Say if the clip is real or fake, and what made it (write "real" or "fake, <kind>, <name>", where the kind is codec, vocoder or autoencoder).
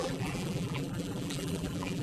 fake, vocoder, BigVGAN v2